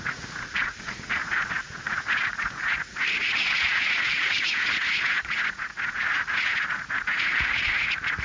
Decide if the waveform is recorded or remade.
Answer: remade